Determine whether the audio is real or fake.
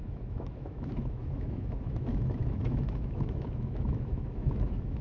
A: fake